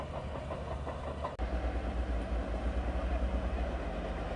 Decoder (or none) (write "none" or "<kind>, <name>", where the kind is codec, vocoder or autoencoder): none